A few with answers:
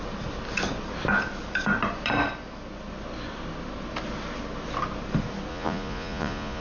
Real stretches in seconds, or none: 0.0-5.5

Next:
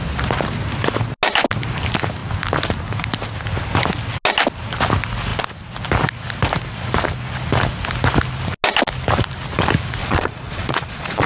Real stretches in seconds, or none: 0.0-10.0

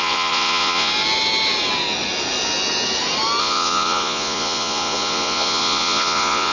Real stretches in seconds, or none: 0.9-3.4

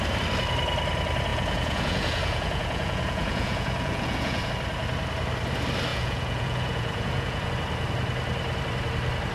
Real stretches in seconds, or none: 0.0-1.3; 4.5-5.9; 7.5-9.3

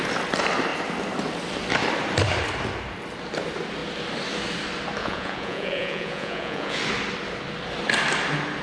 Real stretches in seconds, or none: 0.0-5.0; 6.8-8.6

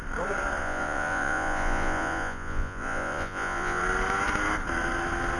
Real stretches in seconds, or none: 0.0-0.6; 3.8-5.4

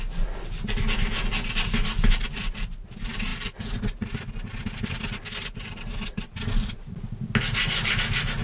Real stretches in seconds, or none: 0.0-8.4